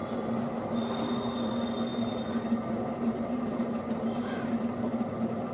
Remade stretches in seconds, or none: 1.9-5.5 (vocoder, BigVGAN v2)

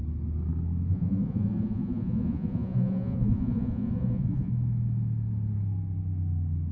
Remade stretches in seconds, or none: 0.9-4.5 (vocoder, Vocos)

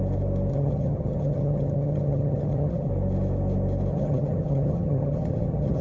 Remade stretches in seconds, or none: 0.5-2.9 (vocoder, HiFi-GAN); 3.9-5.8

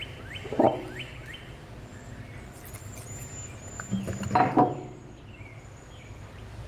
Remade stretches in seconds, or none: none

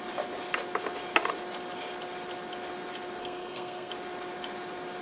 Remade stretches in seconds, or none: 3.2-3.9 (codec, SNAC)

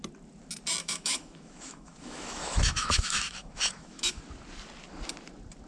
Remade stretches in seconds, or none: 0.8-4.2 (autoencoder, DAC-VAE)

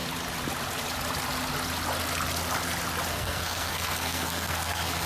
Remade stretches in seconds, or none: 3.1-5.1 (codec, SNAC)

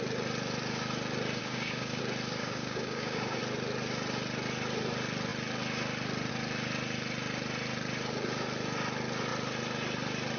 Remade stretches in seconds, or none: 1.4-2.0 (codec, DAC); 2.4-3.4